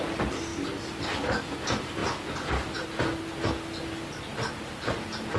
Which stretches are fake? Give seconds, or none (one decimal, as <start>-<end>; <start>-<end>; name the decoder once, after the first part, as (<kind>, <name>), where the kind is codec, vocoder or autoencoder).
none